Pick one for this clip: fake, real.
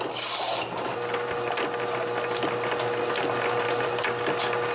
real